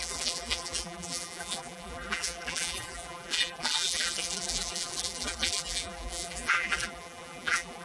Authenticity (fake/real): fake